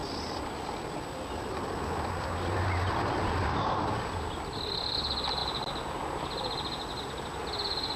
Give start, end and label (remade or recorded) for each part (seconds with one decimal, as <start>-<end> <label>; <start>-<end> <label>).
0.0-8.0 recorded